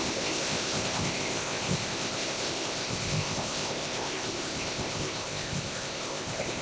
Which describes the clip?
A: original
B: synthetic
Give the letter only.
B